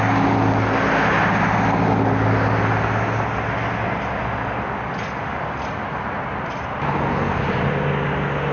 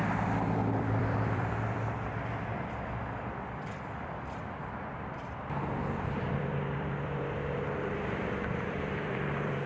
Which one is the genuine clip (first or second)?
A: first